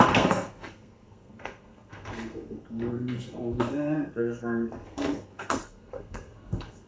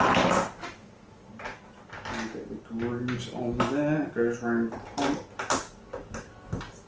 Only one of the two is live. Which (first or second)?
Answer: second